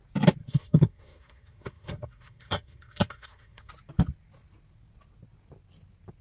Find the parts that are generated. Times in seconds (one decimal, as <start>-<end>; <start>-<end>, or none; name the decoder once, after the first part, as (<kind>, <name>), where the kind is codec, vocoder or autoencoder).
0.4-3.7 (codec, SNAC)